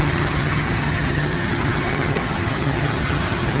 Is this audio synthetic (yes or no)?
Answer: yes